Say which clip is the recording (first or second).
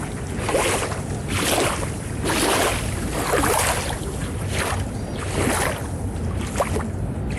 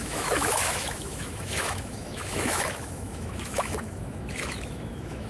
first